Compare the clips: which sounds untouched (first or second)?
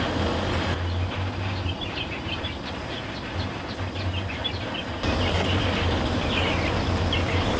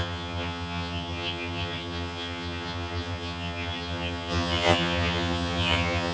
first